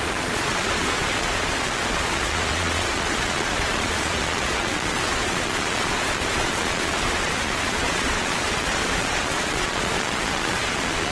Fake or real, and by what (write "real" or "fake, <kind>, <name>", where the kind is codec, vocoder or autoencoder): fake, vocoder, Vocos